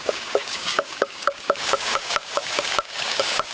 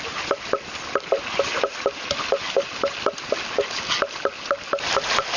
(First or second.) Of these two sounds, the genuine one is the second